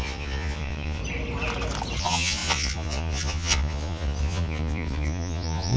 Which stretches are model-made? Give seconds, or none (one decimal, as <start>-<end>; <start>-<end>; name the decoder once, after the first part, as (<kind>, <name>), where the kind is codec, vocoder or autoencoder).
0.0-1.0 (vocoder, Vocos); 2.0-5.8

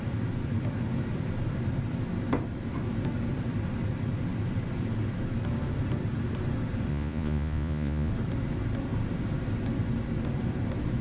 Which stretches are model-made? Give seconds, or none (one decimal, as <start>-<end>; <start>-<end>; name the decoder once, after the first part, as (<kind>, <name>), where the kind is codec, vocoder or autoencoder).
6.9-8.1 (vocoder, Vocos)